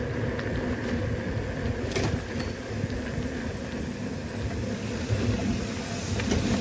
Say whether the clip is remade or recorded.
recorded